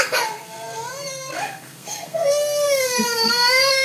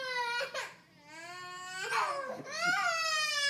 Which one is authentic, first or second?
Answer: second